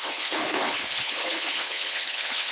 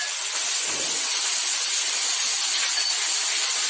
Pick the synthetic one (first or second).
first